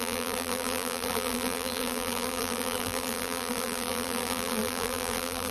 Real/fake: fake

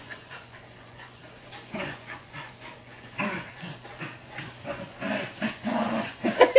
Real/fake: fake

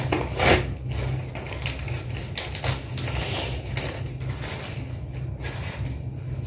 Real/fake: real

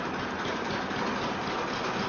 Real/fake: real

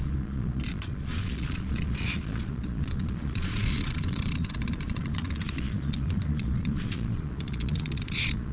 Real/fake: fake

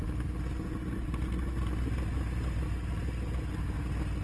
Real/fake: real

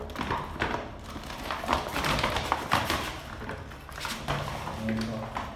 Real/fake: real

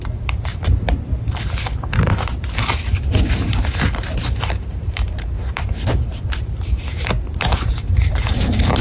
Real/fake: fake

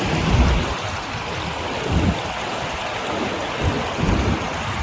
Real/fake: real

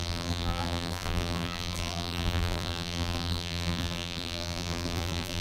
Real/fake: fake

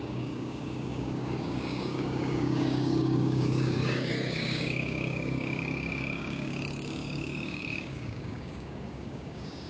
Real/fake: fake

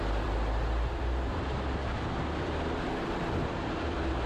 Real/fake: fake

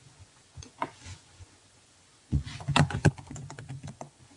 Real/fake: fake